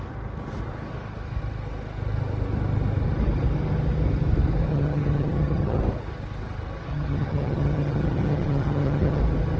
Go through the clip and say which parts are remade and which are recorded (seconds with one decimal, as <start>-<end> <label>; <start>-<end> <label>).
0.0-4.7 recorded; 4.7-5.8 remade; 5.8-6.9 recorded; 6.9-9.2 remade; 9.2-9.6 recorded